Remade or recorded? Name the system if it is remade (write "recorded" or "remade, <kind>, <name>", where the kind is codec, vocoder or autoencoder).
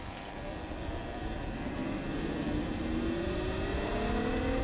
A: recorded